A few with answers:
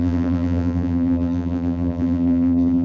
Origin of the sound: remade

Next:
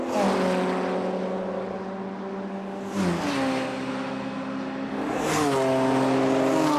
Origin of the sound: recorded